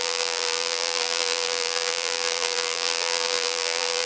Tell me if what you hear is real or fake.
fake